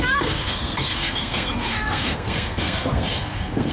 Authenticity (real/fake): fake